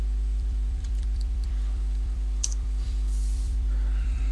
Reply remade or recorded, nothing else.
remade